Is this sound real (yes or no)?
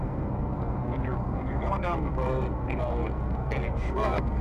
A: no